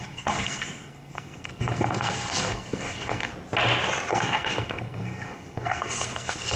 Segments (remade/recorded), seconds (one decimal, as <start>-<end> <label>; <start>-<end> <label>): 0.0-3.3 remade; 3.3-4.1 recorded; 4.1-6.6 remade